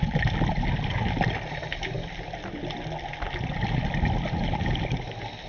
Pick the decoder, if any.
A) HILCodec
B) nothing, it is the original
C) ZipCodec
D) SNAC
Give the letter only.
B